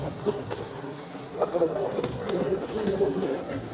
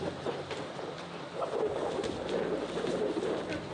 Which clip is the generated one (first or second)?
first